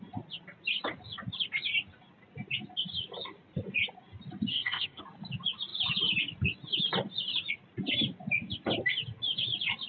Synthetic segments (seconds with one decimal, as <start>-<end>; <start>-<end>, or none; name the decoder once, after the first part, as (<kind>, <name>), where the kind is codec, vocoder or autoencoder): 4.5-5.0 (codec, ZipCodec)

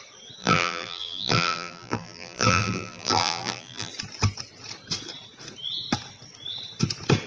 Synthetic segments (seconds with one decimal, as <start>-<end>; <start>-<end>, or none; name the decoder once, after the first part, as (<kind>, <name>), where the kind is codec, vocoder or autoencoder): 0.4-3.9 (vocoder, BigVGAN v2)

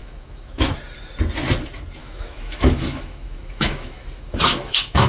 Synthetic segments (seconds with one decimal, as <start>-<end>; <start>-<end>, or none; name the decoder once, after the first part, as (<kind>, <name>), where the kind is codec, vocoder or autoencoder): 0.0-0.7 (autoencoder, DAC-VAE); 2.0-5.1

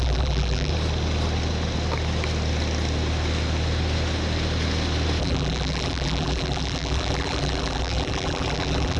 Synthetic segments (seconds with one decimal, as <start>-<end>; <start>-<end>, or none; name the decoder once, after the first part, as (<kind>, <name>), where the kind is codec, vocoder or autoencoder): 0.0-0.7 (vocoder, BigVGAN v2); 5.2-9.0

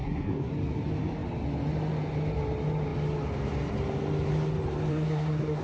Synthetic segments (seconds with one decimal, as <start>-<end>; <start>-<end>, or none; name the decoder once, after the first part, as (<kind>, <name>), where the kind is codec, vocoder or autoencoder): 0.0-0.5 (codec, SNAC); 4.9-5.6

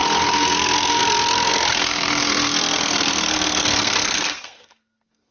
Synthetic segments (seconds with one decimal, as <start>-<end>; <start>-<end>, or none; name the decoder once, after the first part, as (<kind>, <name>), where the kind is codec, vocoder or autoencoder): 0.0-5.3 (codec, SNAC)

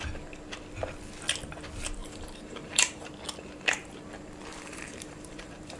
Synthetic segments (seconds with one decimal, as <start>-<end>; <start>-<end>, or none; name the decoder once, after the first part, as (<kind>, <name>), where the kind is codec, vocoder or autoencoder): 2.0-3.1 (vocoder, BigVGAN v2); 4.5-5.8